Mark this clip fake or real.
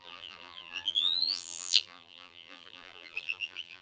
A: fake